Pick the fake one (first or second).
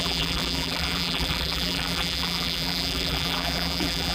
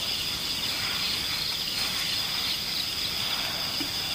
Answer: first